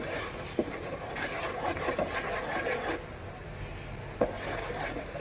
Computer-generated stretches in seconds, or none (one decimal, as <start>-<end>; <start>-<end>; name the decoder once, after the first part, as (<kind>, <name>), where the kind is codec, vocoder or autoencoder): 0.0-1.7 (vocoder, BigVGAN v2); 4.8-5.2